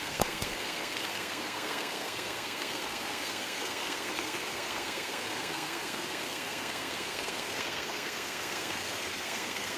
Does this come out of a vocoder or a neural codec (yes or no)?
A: yes